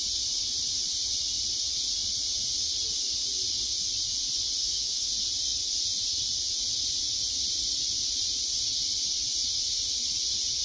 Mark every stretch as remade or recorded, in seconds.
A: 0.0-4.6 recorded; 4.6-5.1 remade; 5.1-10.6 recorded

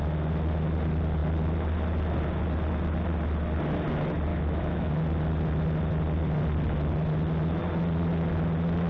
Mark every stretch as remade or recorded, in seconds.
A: 0.0-4.3 recorded; 4.3-4.9 remade; 4.9-8.9 recorded